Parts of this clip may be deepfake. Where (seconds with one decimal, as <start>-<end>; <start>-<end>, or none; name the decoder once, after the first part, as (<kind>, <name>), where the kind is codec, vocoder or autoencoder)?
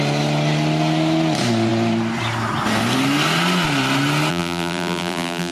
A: 4.3-5.5 (vocoder, BigVGAN v2)